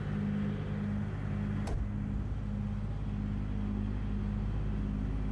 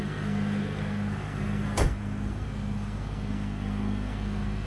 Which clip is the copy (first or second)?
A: second